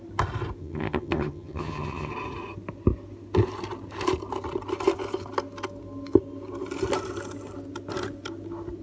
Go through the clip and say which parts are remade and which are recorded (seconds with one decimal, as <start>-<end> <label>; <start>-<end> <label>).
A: 0.0-0.6 recorded; 0.6-2.1 remade; 2.1-8.8 recorded